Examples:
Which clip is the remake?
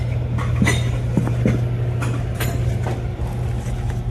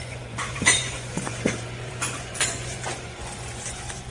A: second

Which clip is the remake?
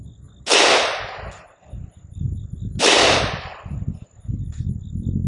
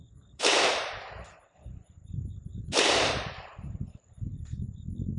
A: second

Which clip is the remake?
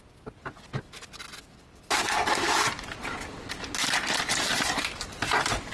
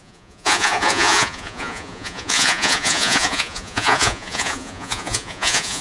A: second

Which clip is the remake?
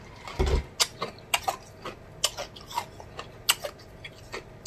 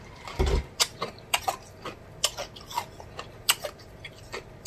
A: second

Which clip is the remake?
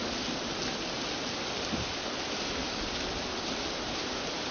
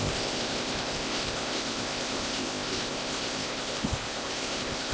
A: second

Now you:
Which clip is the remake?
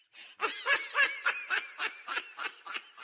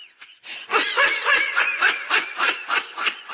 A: second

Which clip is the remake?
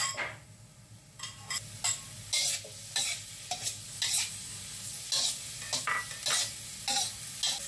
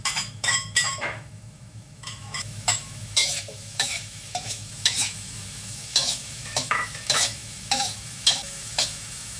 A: second